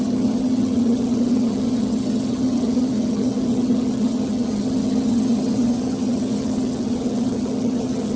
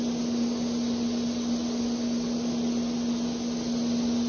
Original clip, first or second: second